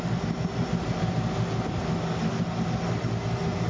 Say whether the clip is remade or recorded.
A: recorded